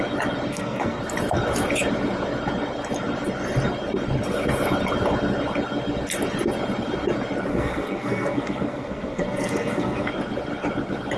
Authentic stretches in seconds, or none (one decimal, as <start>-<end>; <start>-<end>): 0.0-0.5; 1.0-7.5; 10.1-11.2